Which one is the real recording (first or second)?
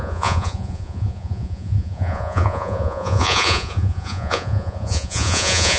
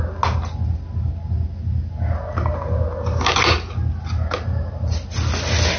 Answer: second